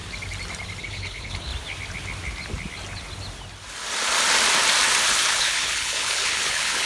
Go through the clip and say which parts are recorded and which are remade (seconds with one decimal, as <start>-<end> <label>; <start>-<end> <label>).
0.0-0.8 recorded; 0.8-1.5 remade; 1.5-5.1 recorded; 5.1-6.8 remade